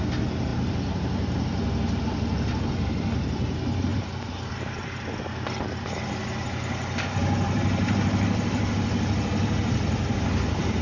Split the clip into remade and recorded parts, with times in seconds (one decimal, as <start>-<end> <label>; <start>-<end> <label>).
0.0-3.9 recorded; 3.9-6.2 remade; 6.2-7.2 recorded; 7.2-10.8 remade

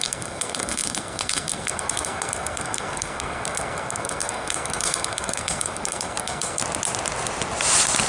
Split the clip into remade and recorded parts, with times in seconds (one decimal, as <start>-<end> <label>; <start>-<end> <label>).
0.0-6.6 remade; 6.6-8.1 recorded

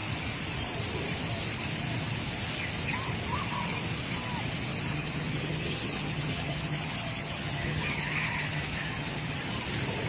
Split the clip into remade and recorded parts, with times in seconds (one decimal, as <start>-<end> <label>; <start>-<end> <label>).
0.0-4.9 recorded; 4.9-9.4 remade; 9.4-10.1 recorded

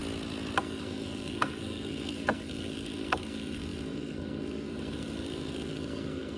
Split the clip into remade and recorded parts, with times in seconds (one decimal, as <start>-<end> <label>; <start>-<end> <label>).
0.0-0.6 recorded; 0.6-6.4 remade

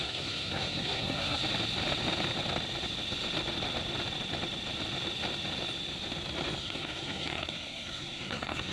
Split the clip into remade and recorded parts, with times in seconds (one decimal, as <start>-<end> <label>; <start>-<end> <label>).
0.0-1.4 remade; 1.4-6.6 recorded; 6.6-8.7 remade

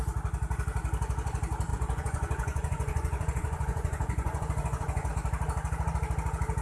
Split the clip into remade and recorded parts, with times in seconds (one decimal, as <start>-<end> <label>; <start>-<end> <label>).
0.0-1.7 recorded; 1.7-5.1 remade; 5.1-6.6 recorded